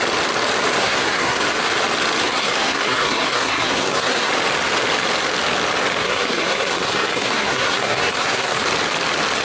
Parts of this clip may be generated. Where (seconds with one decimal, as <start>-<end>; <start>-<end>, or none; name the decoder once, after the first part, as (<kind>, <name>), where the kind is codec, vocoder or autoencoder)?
0.8-1.4 (codec, SNAC); 2.2-4.3; 6.0-8.6